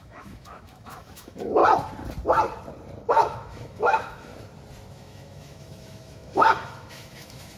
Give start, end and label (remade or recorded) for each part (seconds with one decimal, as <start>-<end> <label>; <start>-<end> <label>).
0.0-1.6 remade; 1.6-3.1 recorded; 3.1-4.3 remade; 4.3-4.9 recorded; 4.9-7.6 remade